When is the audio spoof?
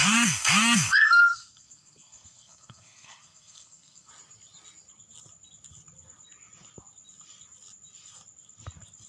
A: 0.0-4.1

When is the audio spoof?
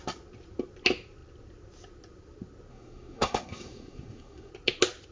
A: 2.7-4.5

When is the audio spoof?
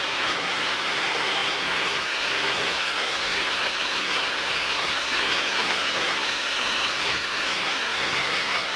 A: 0.0-8.8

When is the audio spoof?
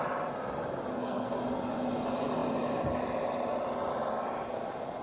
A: 0.9-1.4